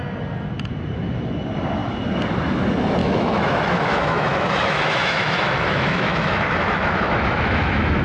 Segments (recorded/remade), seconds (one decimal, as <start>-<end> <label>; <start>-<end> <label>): 0.0-3.0 recorded; 3.0-8.0 remade